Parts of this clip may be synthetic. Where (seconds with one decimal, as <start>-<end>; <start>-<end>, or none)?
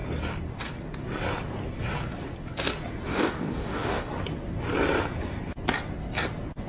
3.1-4.1